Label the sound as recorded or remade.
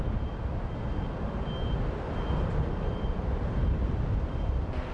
recorded